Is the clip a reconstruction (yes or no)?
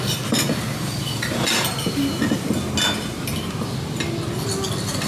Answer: no